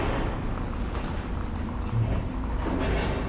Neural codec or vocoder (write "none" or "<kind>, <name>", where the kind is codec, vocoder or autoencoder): none